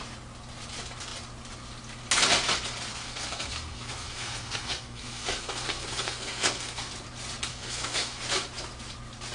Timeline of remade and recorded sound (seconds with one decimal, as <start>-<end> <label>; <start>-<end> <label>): 0.0-2.9 recorded; 2.9-6.9 remade; 6.9-7.5 recorded; 7.5-8.2 remade; 8.2-9.3 recorded